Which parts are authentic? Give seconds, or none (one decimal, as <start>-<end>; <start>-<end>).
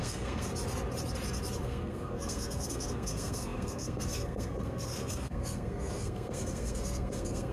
0.5-1.6